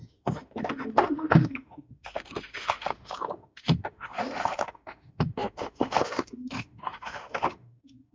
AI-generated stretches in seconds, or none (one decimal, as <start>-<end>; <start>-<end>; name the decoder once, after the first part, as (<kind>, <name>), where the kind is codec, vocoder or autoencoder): 0.0-8.1 (autoencoder, DAC-VAE)